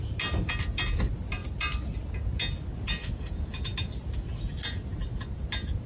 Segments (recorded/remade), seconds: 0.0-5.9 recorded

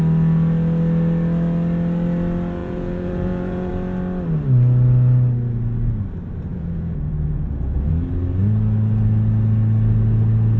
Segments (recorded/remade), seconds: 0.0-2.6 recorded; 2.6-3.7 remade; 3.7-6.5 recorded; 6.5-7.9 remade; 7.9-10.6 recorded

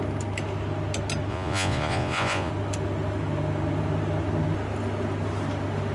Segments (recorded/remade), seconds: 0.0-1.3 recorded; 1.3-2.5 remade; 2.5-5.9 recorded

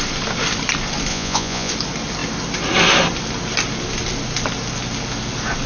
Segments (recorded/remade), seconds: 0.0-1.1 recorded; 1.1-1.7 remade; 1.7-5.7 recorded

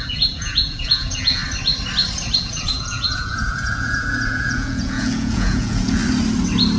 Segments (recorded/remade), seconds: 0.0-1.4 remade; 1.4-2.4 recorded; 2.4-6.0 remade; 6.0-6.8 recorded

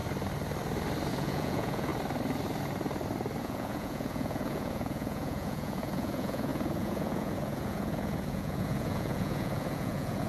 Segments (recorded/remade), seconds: 0.0-1.1 recorded; 1.1-1.9 remade; 1.9-3.4 recorded; 3.4-10.3 remade